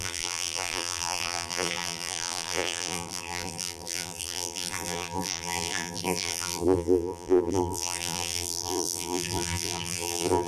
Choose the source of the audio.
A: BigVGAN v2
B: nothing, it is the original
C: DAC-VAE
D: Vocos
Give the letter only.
A